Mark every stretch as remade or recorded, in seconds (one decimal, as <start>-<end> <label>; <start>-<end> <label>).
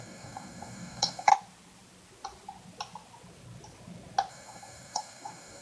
0.0-1.3 remade; 1.3-4.3 recorded; 4.3-5.6 remade